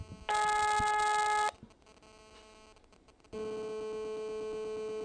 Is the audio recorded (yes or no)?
yes